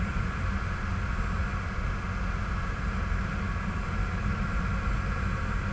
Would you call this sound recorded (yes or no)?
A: yes